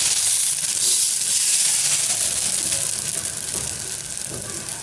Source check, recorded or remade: recorded